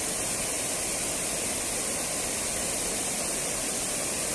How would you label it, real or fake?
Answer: real